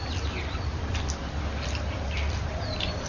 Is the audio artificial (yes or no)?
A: no